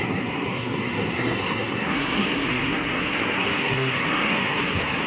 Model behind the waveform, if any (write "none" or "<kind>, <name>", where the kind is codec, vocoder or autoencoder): codec, SNAC